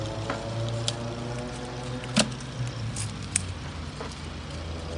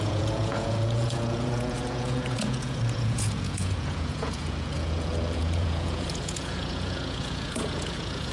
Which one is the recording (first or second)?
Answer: first